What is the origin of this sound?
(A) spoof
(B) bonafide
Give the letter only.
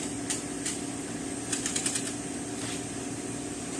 B